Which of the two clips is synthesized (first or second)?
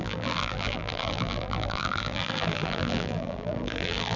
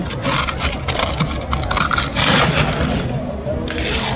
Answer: first